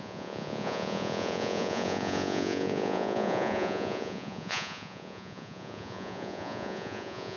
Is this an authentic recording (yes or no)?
no